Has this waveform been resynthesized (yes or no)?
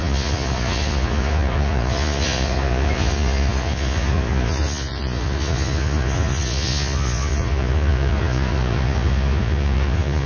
yes